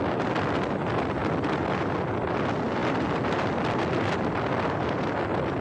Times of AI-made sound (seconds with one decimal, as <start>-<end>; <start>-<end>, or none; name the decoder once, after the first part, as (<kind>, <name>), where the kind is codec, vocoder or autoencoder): 1.2-1.9 (vocoder, BigVGAN v2); 2.8-5.6